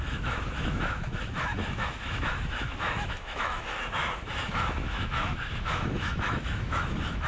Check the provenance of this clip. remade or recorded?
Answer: remade